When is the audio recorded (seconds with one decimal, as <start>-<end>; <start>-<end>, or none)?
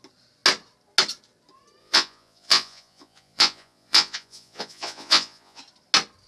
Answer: 0.0-1.8; 5.6-6.3